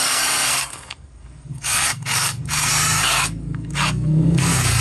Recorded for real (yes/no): no